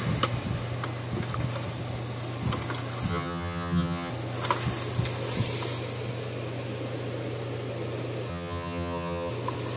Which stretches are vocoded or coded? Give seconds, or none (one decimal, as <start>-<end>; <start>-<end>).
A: 3.1-4.1; 8.3-9.3